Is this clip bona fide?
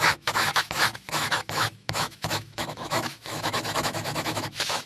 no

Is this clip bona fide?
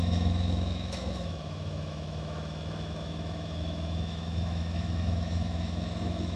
no